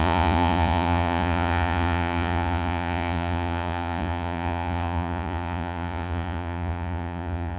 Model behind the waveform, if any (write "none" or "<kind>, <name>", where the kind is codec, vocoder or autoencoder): vocoder, Vocos